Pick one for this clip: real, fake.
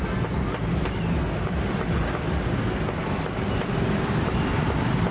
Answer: real